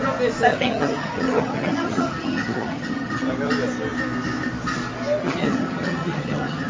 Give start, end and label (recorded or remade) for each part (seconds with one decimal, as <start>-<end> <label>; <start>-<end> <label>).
0.0-0.5 recorded; 0.5-3.3 remade; 3.3-5.2 recorded; 5.2-6.7 remade